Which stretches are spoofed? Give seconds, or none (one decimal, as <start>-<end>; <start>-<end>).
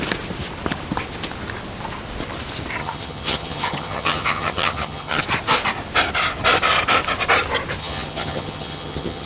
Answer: 2.8-5.2; 7.8-9.3